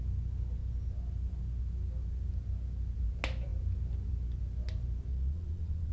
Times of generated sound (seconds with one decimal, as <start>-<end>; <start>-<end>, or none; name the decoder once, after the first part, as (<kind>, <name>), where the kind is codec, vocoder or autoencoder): 5.1-5.9 (vocoder, Vocos)